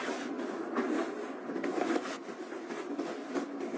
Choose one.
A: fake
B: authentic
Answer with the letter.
B